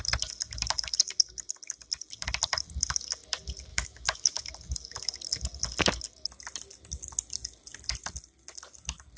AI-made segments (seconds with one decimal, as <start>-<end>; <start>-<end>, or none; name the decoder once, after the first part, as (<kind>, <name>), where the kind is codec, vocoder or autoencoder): 3.7-4.5 (autoencoder, DAC-VAE)